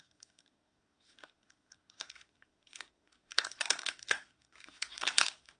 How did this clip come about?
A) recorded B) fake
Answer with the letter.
B